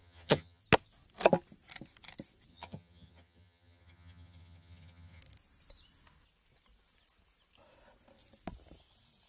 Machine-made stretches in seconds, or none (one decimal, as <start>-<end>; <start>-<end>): 0.0-0.6; 2.5-5.2

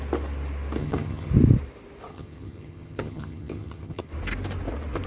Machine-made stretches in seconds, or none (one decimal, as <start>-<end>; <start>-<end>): 0.8-1.3; 2.1-4.1

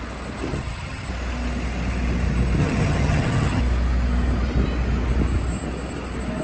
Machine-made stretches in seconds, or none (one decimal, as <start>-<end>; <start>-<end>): 0.5-1.1; 2.6-3.6

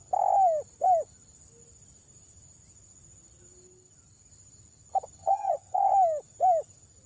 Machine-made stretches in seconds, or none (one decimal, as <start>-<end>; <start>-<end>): 5.2-5.9

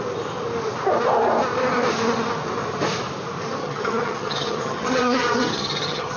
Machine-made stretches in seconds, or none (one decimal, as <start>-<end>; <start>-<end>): 3.6-6.2

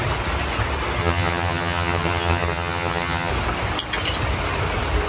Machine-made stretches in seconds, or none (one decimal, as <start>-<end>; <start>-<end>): 1.0-3.3